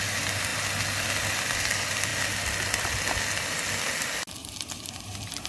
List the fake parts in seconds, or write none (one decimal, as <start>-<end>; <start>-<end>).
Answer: 4.4-5.5